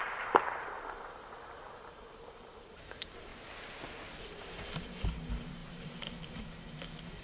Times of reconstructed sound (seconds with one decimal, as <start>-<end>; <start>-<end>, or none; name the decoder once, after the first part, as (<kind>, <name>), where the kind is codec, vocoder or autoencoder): 0.0-3.3 (vocoder, BigVGAN v2); 4.2-7.2